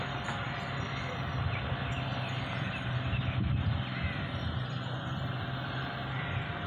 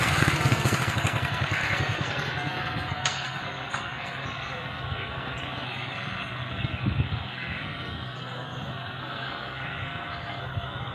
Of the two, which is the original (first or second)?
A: first